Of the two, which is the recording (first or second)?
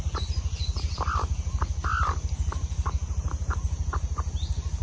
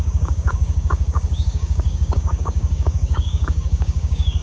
first